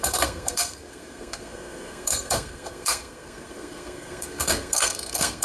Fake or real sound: fake